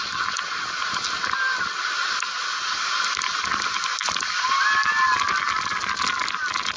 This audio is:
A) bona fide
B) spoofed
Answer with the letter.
A